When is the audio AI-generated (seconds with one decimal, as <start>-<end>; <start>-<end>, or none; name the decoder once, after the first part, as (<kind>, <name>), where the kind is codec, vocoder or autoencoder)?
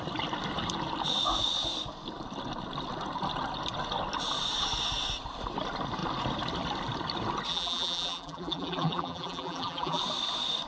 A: 7.5-10.0 (vocoder, BigVGAN v2)